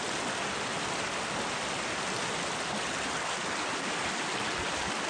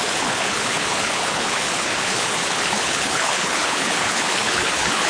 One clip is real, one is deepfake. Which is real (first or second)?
first